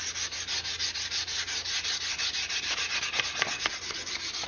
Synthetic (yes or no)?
no